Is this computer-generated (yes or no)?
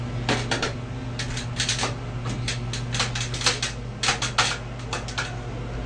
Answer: no